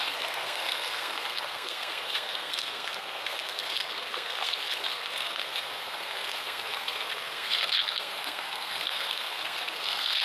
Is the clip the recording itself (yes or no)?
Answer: no